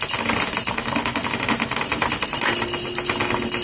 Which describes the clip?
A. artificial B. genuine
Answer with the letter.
B